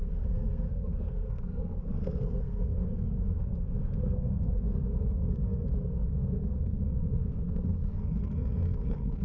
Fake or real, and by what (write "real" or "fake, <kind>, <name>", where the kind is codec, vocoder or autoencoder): fake, codec, SNAC